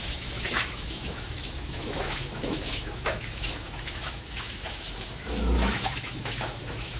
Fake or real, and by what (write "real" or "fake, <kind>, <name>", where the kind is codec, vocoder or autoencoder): fake, autoencoder, DAC-VAE